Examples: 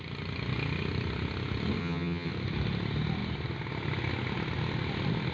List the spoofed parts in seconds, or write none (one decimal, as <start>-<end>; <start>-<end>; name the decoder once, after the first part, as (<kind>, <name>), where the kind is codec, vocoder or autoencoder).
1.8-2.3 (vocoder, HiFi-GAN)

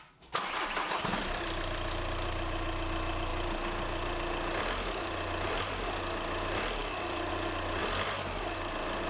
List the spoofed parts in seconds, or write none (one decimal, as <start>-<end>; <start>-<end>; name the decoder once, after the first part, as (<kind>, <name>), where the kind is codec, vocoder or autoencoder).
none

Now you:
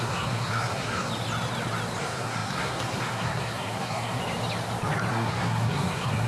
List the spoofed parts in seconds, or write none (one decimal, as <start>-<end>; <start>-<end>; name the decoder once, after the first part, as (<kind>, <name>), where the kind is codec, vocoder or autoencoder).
0.0-1.1 (codec, SNAC); 2.0-4.2; 5.1-6.3